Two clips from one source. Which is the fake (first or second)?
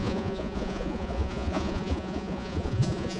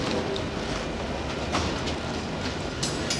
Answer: first